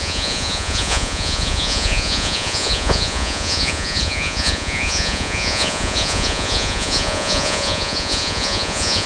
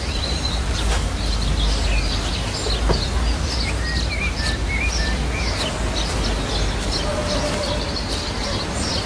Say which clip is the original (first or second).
second